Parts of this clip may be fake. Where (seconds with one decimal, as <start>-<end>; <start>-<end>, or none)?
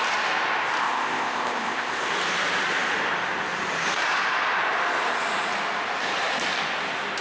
0.8-2.1